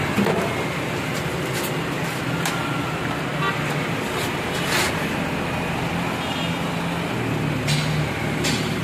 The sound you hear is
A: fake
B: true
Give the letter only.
B